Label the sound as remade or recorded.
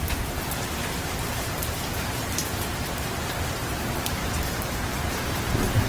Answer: remade